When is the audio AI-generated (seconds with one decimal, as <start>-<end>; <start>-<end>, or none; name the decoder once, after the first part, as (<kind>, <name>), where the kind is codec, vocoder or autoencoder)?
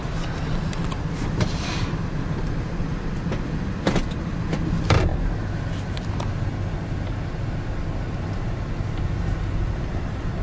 0.0-5.1 (vocoder, BigVGAN v2); 8.9-10.4